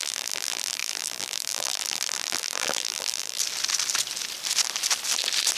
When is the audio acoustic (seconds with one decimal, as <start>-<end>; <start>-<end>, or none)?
3.4-5.6